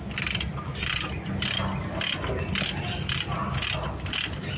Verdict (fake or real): real